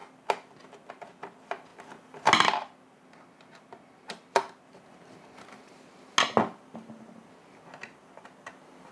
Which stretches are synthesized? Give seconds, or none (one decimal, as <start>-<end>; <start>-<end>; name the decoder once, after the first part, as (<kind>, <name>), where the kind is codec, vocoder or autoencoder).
none